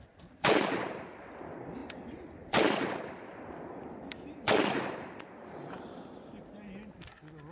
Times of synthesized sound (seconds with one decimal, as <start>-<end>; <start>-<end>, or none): 0.0-7.5